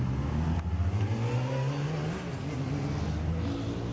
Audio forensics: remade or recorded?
recorded